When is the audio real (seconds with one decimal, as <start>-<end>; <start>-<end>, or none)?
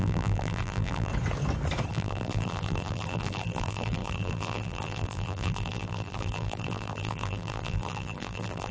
1.1-1.9